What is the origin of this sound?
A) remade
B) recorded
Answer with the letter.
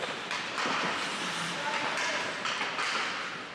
B